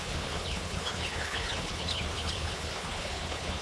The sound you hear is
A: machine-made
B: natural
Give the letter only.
A